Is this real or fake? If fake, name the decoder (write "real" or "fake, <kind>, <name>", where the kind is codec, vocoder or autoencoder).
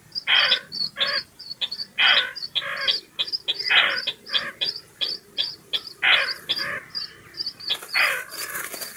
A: real